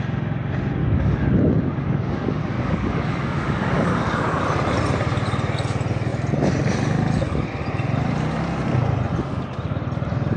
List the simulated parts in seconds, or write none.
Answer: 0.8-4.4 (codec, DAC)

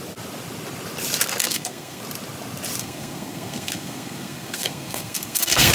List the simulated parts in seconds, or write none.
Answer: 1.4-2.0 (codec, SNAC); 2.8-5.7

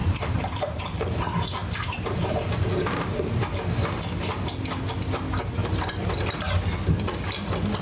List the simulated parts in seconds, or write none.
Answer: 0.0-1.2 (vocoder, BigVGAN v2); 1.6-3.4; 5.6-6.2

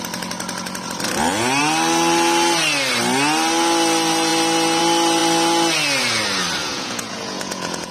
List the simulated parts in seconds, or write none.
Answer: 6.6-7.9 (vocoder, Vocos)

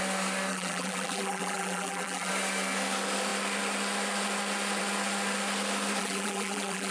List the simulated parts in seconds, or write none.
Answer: 0.5-2.3 (vocoder, BigVGAN v2); 6.0-6.9

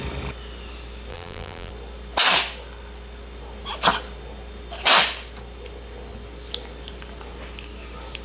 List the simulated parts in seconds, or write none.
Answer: 1.1-1.7 (vocoder, BigVGAN v2)

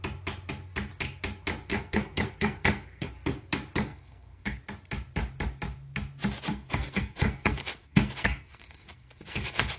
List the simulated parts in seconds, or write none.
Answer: 1.7-3.1 (codec, SNAC); 3.9-4.6; 6.5-9.8